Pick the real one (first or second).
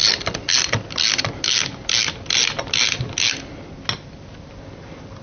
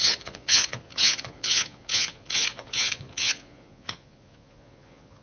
first